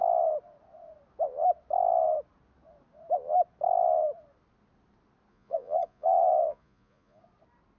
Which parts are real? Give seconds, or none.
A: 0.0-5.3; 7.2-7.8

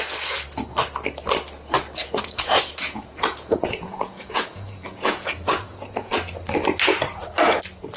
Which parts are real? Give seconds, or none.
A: 0.0-2.0; 6.1-8.0

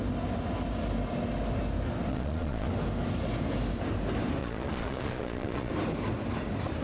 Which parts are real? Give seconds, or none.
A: 0.0-2.1; 2.7-4.4; 5.7-6.8

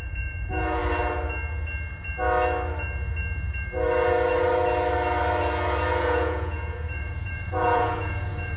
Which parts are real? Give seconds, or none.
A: 0.8-6.0

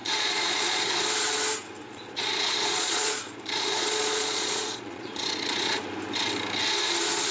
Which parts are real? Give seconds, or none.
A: 0.9-1.8; 5.8-7.3

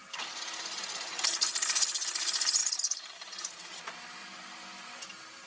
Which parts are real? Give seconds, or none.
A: 0.0-5.5

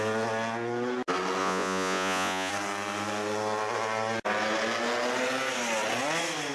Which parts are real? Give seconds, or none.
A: 0.0-1.4; 2.5-6.5